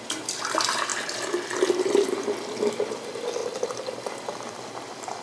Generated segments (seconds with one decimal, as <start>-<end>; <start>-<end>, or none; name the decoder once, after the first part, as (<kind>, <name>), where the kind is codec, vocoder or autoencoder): none